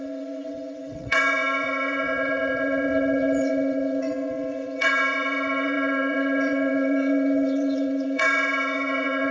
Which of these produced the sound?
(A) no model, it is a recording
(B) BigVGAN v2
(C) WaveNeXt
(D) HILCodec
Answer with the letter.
C